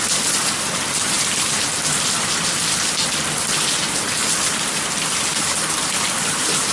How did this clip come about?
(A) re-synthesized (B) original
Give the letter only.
B